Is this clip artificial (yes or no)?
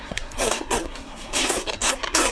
yes